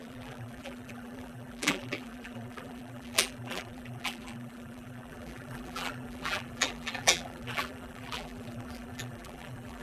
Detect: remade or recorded remade